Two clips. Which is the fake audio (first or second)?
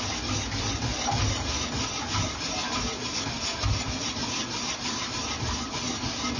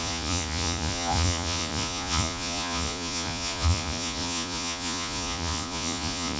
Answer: second